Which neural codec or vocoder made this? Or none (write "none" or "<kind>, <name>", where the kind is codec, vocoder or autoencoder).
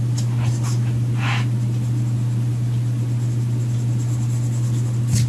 none